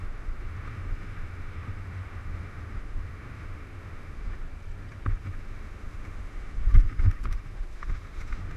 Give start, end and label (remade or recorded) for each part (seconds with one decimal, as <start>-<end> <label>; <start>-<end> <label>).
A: 0.0-4.4 remade; 4.4-5.2 recorded; 5.2-8.6 remade